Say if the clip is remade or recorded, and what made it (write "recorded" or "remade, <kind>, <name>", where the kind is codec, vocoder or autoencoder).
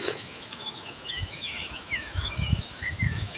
remade, autoencoder, DAC-VAE